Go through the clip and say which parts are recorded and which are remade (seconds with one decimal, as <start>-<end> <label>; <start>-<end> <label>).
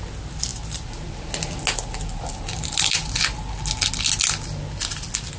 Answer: 0.0-5.4 recorded